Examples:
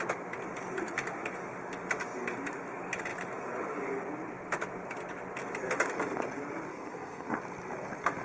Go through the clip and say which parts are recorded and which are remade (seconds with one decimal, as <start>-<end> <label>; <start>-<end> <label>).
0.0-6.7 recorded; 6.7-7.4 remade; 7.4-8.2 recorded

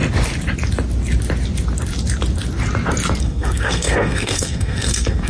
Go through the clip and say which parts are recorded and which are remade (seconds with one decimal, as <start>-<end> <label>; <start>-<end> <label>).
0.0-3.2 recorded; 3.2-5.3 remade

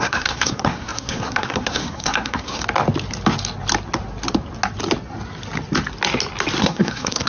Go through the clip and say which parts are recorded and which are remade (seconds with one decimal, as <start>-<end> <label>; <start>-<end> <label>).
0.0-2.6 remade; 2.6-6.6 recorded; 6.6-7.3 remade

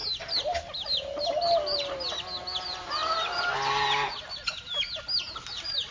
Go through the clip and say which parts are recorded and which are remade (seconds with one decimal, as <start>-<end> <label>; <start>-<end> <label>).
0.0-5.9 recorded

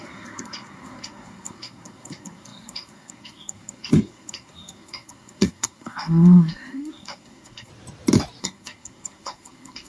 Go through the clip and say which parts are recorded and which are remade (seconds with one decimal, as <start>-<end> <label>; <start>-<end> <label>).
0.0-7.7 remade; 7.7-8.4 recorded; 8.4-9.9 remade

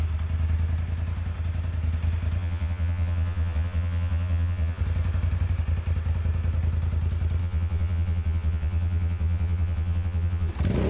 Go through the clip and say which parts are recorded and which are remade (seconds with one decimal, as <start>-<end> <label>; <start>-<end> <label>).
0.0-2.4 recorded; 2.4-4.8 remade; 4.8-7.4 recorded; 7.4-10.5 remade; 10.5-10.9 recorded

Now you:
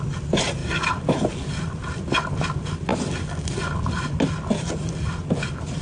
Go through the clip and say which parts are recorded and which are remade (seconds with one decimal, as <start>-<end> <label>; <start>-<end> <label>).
0.0-5.8 recorded